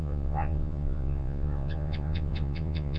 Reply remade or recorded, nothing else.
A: remade